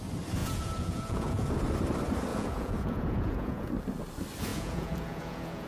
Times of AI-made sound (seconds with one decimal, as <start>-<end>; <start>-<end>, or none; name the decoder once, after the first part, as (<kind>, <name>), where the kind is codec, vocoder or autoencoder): 0.4-1.5 (vocoder, Vocos); 2.3-3.7; 4.5-5.7

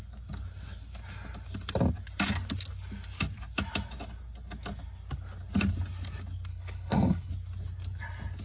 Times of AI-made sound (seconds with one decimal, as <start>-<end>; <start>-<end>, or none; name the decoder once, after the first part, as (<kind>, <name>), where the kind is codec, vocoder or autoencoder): 6.5-7.3 (codec, HILCodec)

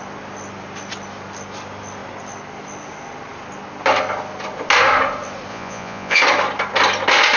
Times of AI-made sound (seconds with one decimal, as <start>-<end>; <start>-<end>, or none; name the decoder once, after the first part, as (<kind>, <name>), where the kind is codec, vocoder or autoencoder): 5.5-6.2 (vocoder, Vocos)